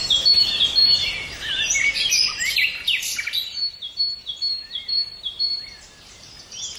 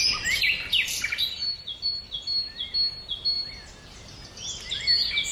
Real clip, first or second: second